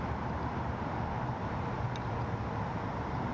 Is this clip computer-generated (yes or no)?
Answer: no